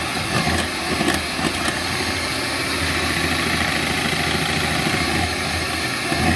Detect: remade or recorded recorded